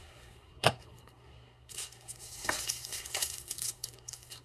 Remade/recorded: remade